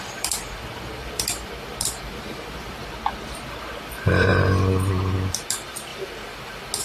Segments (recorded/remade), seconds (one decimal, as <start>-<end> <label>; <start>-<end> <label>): 0.0-2.8 remade; 2.8-3.9 recorded; 3.9-4.3 remade; 4.3-5.5 recorded; 5.5-5.9 remade; 5.9-6.8 recorded